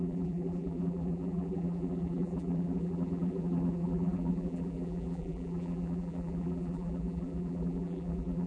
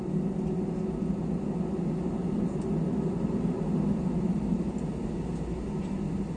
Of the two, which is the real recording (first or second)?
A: second